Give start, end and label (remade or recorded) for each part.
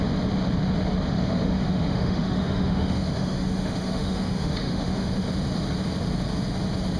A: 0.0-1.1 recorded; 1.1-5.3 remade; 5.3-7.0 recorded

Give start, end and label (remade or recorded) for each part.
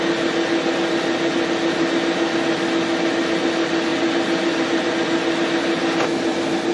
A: 0.0-3.9 recorded; 3.9-4.9 remade; 4.9-5.8 recorded; 5.8-6.7 remade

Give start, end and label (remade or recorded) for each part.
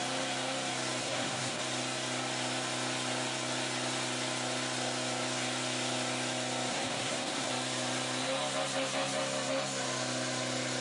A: 0.0-1.0 recorded; 1.0-1.6 remade; 1.6-6.7 recorded; 6.7-7.5 remade; 7.5-10.8 recorded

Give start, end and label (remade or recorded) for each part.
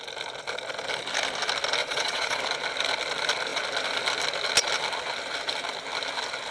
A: 0.0-1.8 recorded; 1.8-2.4 remade; 2.4-6.5 recorded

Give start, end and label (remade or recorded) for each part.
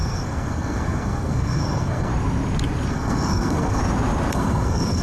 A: 0.0-2.1 remade; 2.1-2.9 recorded; 2.9-3.8 remade; 3.8-4.3 recorded; 4.3-5.0 remade